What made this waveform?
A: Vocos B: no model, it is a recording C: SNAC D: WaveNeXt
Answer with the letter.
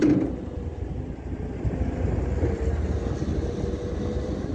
B